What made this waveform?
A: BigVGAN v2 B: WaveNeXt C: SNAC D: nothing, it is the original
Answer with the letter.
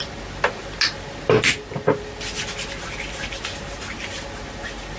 D